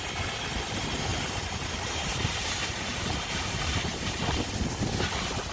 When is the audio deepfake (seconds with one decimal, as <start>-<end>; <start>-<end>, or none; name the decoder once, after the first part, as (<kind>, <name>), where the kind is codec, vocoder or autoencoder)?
1.1-4.4 (vocoder, BigVGAN v2)